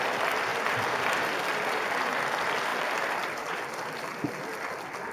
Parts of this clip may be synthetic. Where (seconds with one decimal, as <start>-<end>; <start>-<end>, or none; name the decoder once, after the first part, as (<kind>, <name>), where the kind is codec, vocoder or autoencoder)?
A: none